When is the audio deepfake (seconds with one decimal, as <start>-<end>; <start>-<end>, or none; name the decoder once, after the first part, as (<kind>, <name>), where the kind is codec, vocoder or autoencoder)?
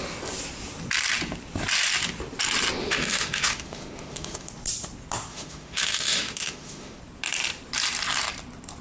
2.8-4.5 (autoencoder, DAC-VAE); 5.3-7.0